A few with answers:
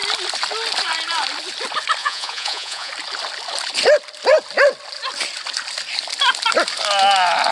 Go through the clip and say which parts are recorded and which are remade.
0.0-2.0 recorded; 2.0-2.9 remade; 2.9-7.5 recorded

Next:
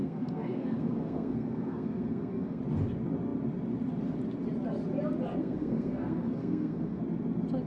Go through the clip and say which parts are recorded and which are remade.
0.0-2.6 remade; 2.6-5.4 recorded; 5.4-7.0 remade; 7.0-7.7 recorded

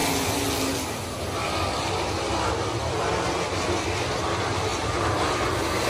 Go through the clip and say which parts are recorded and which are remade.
0.0-5.9 recorded

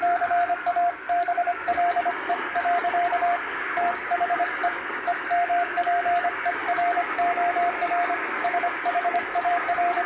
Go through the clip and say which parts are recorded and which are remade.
0.0-10.1 remade